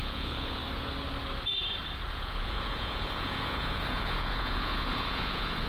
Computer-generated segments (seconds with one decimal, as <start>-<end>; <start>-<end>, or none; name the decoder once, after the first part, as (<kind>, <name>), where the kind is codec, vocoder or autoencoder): 0.0-0.6 (vocoder, Vocos); 2.1-5.7